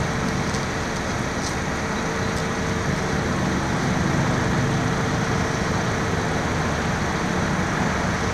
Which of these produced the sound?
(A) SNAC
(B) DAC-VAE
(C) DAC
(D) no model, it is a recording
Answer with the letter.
D